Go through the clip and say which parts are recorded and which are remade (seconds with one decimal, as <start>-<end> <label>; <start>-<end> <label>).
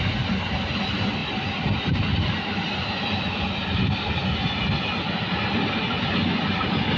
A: 0.0-7.0 recorded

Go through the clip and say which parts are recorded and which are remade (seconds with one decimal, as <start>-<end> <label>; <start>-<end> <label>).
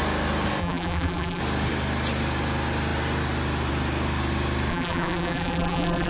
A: 0.0-0.6 recorded; 0.6-1.4 remade; 1.4-4.7 recorded; 4.7-6.1 remade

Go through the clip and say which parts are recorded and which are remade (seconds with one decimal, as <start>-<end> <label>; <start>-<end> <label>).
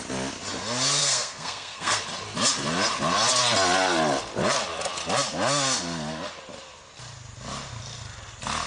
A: 0.0-1.0 recorded; 1.0-2.0 remade; 2.0-8.7 recorded